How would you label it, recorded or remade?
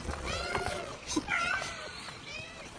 remade